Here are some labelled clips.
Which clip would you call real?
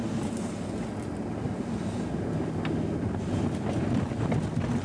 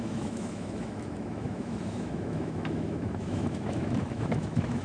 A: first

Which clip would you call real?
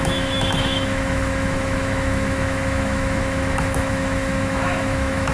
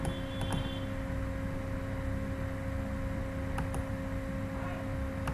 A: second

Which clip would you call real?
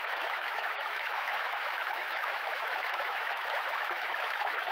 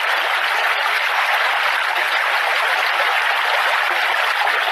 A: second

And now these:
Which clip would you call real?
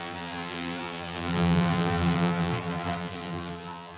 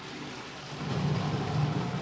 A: second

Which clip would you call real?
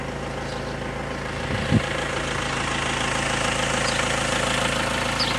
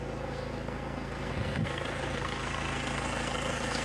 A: first